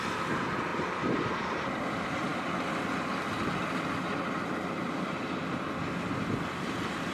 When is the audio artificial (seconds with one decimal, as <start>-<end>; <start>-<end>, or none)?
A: 0.7-1.8